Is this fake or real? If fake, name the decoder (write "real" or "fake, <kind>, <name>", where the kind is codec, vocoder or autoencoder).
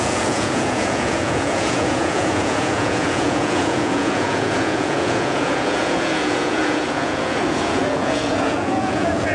fake, vocoder, Vocos